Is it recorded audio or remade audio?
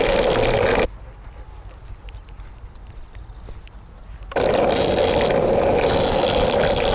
recorded